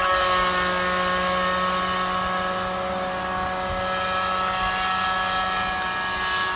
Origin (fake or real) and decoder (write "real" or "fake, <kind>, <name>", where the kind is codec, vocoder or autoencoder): real